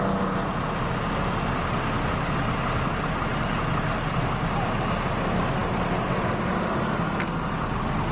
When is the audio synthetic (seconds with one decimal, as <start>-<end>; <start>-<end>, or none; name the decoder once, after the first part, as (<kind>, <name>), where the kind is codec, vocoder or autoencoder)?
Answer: none